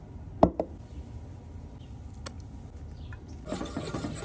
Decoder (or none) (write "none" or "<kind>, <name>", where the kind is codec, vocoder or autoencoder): none